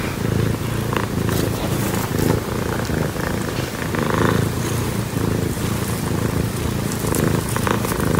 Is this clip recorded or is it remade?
recorded